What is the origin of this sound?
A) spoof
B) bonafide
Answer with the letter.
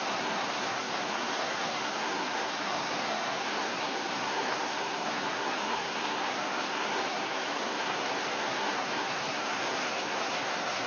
A